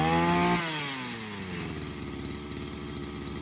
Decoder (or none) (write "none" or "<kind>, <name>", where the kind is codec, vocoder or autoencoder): none